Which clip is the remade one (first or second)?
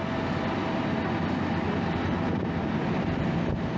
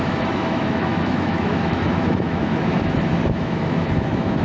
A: second